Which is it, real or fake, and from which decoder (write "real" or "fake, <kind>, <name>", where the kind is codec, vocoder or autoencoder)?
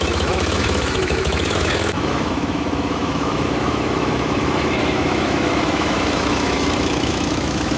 fake, autoencoder, DAC-VAE